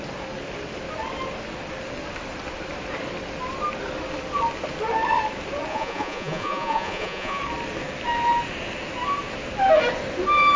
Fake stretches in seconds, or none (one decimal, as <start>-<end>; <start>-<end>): 5.7-7.4